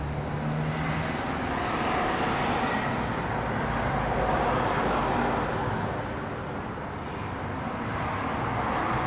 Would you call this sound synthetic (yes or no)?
no